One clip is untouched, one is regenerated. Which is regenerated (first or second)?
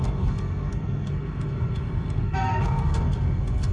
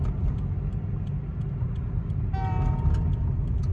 first